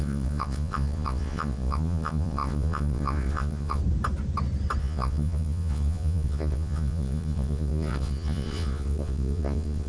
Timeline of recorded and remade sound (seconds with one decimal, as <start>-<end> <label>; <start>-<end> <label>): 0.0-3.8 remade; 3.8-4.8 recorded; 4.8-9.9 remade